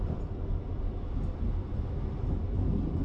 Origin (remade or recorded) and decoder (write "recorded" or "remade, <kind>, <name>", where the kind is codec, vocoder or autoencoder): recorded